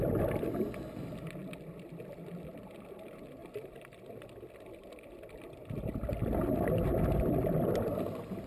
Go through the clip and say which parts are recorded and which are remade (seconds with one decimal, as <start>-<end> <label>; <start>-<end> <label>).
0.0-8.5 recorded